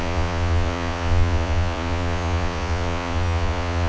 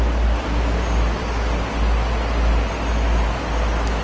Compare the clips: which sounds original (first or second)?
second